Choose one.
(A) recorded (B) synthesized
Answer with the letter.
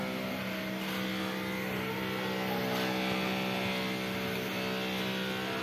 A